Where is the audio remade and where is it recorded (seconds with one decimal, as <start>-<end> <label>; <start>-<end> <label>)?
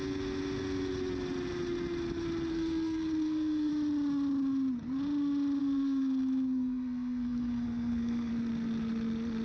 0.0-2.5 recorded; 2.5-3.7 remade; 3.7-5.6 recorded; 5.6-8.3 remade; 8.3-9.4 recorded